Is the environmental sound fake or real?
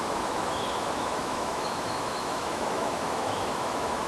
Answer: fake